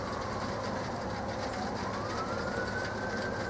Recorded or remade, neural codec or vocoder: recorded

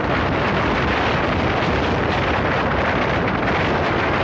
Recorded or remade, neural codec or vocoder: recorded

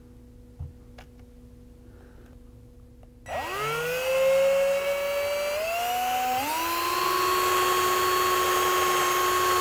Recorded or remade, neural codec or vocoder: recorded